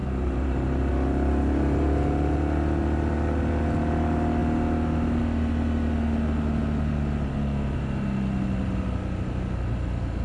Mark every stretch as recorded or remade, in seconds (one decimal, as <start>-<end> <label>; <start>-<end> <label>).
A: 0.0-0.9 remade; 0.9-10.2 recorded